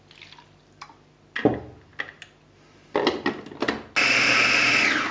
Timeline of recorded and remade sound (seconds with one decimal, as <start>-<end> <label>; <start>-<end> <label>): 0.0-5.1 recorded